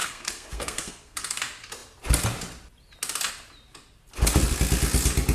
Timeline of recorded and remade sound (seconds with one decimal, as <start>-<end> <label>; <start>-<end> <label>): 0.0-1.4 remade; 1.4-5.3 recorded